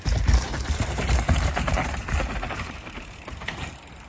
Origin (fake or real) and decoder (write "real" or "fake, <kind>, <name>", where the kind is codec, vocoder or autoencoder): fake, vocoder, BigVGAN v2